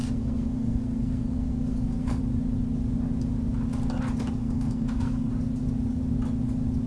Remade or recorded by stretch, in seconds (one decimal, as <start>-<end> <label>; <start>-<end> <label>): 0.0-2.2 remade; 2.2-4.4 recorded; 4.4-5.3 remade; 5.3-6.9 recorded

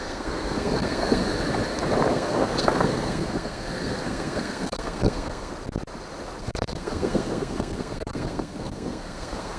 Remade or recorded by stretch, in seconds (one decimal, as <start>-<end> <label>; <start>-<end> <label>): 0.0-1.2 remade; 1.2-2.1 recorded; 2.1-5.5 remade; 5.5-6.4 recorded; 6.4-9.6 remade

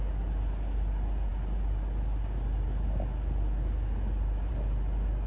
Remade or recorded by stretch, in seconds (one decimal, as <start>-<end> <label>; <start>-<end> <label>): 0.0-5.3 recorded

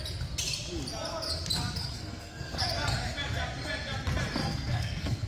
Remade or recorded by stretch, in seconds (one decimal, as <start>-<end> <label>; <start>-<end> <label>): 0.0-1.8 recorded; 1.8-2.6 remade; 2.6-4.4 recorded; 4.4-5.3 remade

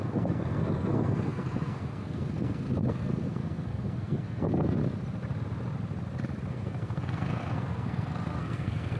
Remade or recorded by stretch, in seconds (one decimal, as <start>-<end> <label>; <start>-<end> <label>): 0.0-4.8 remade; 4.8-6.5 recorded; 6.5-9.0 remade

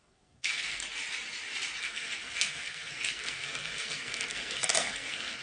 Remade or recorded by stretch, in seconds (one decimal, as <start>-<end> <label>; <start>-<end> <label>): 0.0-0.8 remade; 0.8-1.8 recorded; 1.8-5.4 remade

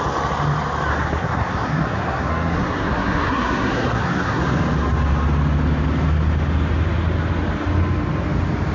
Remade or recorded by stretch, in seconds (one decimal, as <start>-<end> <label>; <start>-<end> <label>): 0.0-0.9 recorded; 0.9-4.4 remade; 4.4-8.7 recorded